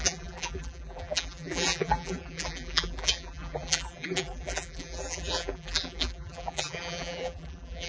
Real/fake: fake